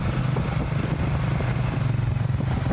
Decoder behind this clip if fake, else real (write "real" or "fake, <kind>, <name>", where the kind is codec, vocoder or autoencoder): real